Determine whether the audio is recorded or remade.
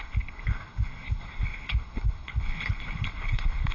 remade